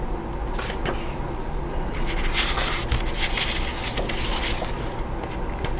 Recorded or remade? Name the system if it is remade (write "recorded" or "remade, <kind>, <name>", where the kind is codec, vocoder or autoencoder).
recorded